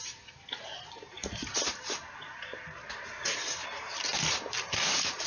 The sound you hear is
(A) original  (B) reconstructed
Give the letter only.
B